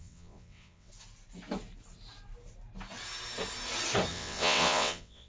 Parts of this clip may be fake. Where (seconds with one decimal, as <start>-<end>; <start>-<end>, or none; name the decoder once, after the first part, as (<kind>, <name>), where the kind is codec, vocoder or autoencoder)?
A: 0.0-0.9 (vocoder, WaveNeXt); 4.1-5.3